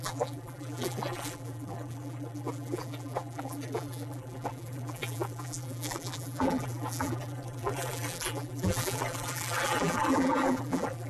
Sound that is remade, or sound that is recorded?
remade